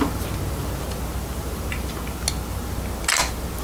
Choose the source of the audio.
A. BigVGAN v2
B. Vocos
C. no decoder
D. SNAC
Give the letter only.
C